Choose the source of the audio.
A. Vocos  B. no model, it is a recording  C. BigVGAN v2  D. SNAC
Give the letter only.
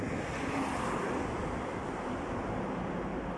B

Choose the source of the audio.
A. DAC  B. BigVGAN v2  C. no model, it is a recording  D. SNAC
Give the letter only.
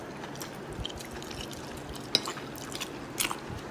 C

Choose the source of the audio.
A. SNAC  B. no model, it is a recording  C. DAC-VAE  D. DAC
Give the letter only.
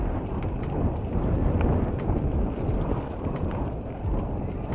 B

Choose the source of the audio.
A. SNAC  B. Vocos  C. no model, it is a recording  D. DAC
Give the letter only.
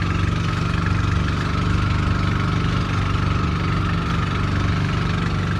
C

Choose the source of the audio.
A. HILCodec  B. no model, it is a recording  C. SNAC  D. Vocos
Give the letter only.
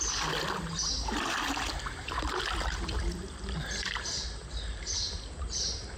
B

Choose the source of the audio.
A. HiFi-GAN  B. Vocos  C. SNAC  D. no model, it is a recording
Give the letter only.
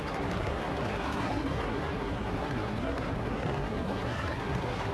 C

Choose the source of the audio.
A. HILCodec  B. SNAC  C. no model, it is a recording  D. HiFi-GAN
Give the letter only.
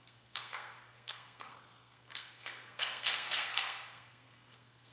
B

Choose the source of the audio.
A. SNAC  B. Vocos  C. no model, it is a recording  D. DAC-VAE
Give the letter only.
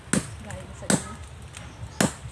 C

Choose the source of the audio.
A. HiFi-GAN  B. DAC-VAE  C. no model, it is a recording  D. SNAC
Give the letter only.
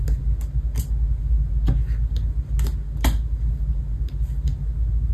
C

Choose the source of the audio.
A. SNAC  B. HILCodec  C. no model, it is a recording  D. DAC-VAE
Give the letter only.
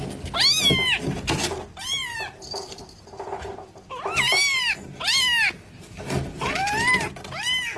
C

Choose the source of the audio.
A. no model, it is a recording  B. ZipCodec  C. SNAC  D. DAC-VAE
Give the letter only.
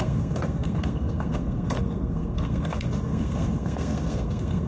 C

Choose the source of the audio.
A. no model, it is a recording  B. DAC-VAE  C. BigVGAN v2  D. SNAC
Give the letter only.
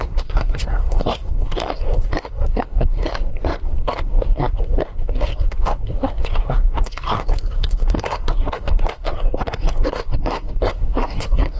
D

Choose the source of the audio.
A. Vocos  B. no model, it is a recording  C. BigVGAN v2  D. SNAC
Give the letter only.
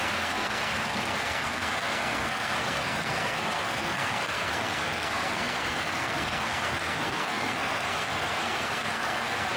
D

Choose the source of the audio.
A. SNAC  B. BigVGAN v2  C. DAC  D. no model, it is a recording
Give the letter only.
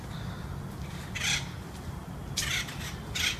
D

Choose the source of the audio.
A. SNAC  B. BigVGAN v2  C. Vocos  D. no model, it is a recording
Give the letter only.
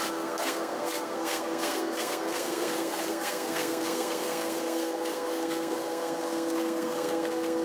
A